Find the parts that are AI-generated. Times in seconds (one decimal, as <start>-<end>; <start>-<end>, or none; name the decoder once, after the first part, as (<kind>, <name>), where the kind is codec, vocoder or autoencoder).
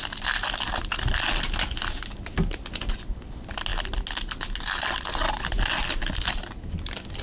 none